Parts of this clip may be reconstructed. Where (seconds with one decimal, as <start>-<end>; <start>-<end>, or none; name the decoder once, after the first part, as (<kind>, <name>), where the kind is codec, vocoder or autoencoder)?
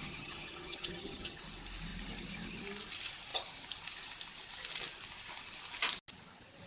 0.0-1.4 (vocoder, HiFi-GAN)